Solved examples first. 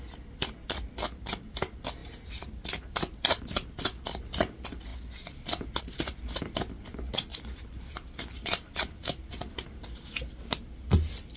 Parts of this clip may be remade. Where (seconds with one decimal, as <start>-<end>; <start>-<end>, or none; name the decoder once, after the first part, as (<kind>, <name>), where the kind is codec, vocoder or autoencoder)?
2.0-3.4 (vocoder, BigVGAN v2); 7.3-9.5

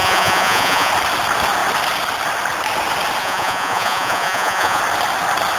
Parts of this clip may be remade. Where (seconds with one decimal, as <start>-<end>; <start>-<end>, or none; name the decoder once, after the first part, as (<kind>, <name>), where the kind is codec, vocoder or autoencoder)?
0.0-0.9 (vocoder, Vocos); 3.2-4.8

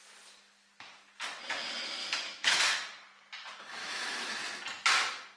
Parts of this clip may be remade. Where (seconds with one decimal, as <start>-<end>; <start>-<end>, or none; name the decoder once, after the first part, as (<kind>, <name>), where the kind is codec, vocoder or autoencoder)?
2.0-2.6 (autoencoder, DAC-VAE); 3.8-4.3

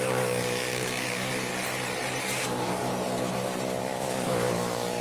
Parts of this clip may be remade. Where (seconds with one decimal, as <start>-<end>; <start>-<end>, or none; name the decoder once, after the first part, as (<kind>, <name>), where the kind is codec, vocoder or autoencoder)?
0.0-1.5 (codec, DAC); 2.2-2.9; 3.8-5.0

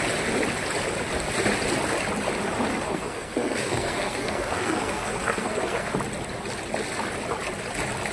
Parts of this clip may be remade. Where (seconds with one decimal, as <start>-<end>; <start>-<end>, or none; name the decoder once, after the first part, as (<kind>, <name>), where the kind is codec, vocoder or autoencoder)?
2.7-5.9 (codec, SNAC)